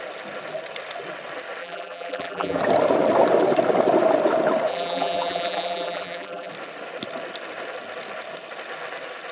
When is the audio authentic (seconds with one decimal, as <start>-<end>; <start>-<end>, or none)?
0.0-1.6; 2.6-4.7; 6.5-9.3